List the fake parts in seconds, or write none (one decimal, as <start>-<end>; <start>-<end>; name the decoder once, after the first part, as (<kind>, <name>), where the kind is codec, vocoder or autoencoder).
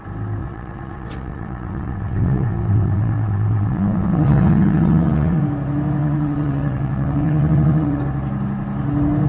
0.4-5.4 (vocoder, WaveNeXt); 6.0-8.0